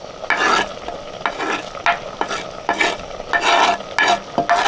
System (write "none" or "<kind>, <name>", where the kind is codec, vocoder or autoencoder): none